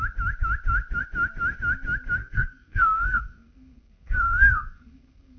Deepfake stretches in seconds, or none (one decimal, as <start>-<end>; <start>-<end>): 2.2-5.4